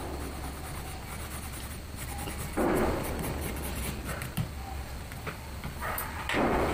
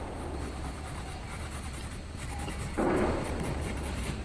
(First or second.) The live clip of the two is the first